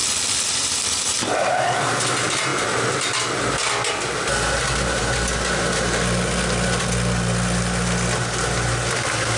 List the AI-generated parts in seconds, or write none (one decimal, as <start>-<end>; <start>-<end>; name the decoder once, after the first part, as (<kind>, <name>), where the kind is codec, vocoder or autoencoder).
none